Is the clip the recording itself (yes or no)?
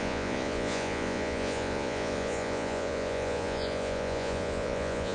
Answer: no